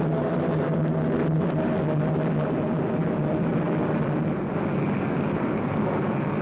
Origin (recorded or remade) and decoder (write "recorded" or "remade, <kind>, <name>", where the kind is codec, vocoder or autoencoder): recorded